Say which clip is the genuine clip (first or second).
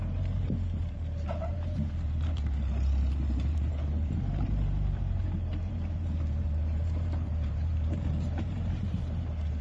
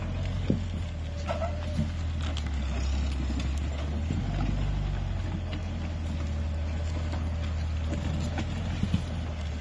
second